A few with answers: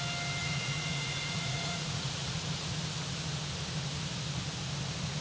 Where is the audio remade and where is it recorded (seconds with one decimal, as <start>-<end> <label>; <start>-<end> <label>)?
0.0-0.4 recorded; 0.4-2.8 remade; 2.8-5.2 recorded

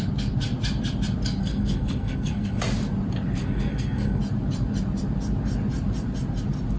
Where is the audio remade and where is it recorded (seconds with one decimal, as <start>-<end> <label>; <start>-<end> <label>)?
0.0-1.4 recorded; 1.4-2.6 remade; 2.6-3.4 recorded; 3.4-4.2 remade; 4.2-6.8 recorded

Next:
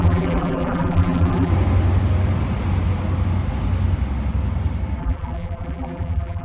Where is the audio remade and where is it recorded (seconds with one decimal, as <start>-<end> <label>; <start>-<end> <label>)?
0.0-1.5 remade; 1.5-5.0 recorded; 5.0-6.4 remade

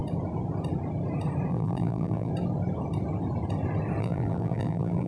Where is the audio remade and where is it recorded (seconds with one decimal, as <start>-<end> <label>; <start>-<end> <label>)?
0.0-1.5 recorded; 1.5-2.3 remade; 2.3-4.0 recorded; 4.0-5.1 remade